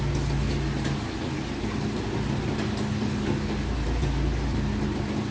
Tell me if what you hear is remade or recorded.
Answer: recorded